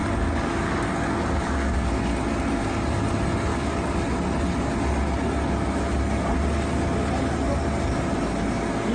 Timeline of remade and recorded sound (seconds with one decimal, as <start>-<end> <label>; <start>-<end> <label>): 0.0-2.1 remade; 2.1-3.5 recorded; 3.5-4.0 remade; 4.0-8.9 recorded